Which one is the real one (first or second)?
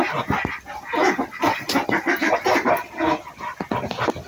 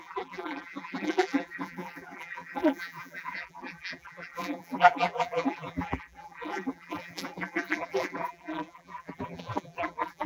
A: first